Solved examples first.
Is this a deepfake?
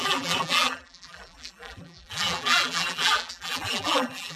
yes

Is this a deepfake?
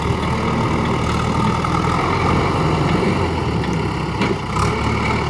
no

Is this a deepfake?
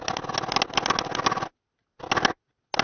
no